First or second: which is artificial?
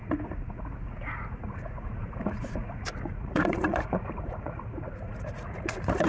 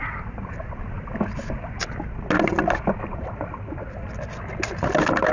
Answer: first